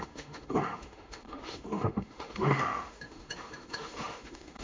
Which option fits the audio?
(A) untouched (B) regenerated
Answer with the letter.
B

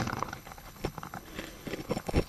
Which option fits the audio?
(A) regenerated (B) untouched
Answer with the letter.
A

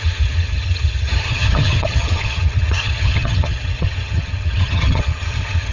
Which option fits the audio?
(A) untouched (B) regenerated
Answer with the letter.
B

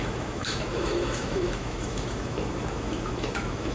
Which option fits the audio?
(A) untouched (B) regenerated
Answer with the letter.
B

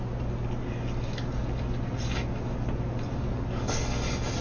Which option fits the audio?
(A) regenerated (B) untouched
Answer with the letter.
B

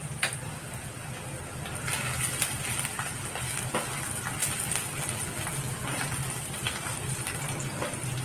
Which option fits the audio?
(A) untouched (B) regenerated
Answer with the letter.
A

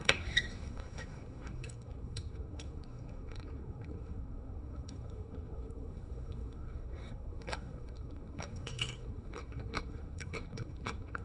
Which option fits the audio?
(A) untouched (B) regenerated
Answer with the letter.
B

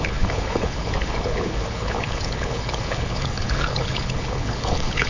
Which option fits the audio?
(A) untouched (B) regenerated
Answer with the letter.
B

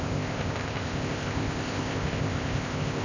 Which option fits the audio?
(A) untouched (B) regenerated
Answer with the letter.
B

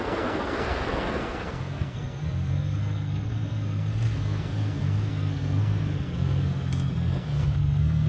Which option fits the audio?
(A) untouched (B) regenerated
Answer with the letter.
B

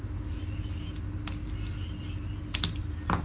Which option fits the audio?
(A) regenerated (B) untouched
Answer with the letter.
B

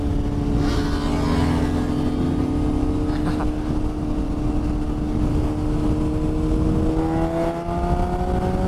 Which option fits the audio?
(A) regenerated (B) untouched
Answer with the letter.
B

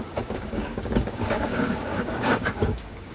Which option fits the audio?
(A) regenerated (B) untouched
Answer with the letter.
A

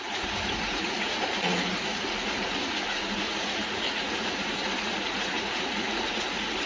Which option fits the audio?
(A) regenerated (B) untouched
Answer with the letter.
A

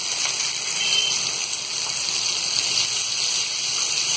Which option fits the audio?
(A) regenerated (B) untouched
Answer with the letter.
B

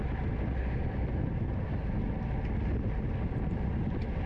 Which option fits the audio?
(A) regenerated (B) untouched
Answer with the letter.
B